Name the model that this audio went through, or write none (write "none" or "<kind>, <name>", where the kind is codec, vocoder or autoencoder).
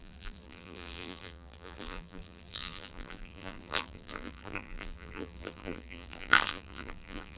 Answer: vocoder, BigVGAN v2